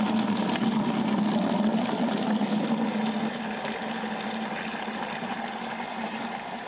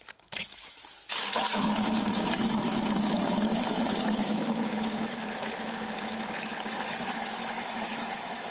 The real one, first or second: first